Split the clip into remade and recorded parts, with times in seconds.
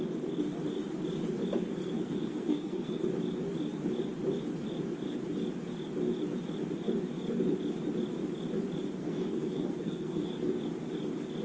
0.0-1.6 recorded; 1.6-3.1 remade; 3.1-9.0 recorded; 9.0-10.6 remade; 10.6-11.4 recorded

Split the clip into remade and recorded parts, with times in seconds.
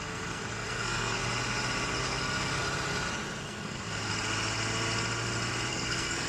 0.0-1.2 remade; 1.2-2.0 recorded; 2.0-2.6 remade; 2.6-3.4 recorded; 3.4-4.1 remade; 4.1-5.7 recorded; 5.7-6.3 remade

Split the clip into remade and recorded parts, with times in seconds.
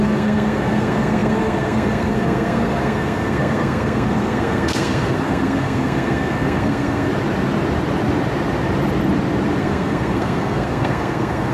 0.0-7.1 remade; 7.1-9.6 recorded; 9.6-11.5 remade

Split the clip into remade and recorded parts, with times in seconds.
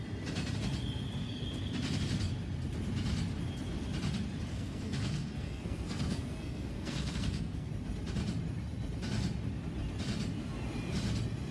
0.0-4.5 recorded; 4.5-7.7 remade; 7.7-11.5 recorded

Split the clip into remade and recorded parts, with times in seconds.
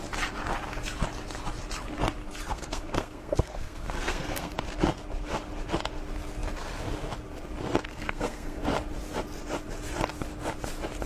0.0-2.5 recorded; 2.5-4.5 remade; 4.5-7.9 recorded; 7.9-8.6 remade; 8.6-11.1 recorded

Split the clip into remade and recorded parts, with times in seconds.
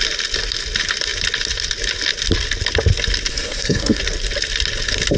0.0-3.3 recorded; 3.3-4.0 remade; 4.0-5.2 recorded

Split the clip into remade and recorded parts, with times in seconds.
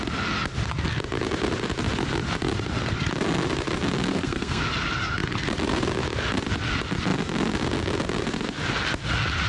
0.0-4.1 recorded; 4.1-4.6 remade; 4.6-9.5 recorded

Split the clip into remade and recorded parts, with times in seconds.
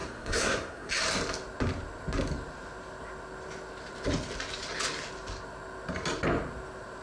0.0-0.9 remade; 0.9-7.0 recorded